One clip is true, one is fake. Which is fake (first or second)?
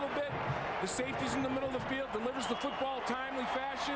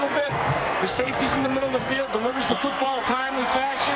second